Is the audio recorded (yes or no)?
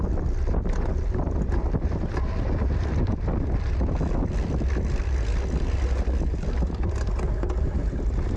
yes